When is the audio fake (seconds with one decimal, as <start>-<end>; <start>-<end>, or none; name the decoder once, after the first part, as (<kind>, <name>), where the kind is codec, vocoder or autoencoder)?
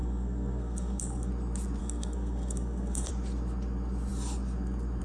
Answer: 0.0-1.3 (codec, SNAC); 1.8-3.1